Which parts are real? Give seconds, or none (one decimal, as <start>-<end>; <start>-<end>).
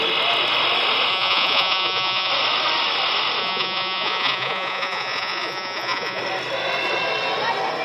0.0-1.1; 2.3-3.4; 6.2-7.8